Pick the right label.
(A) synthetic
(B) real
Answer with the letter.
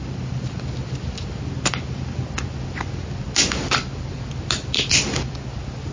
B